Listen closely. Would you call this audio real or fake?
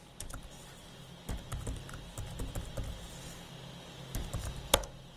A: real